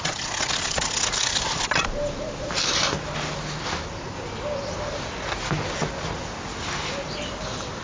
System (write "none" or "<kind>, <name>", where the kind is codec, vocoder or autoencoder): none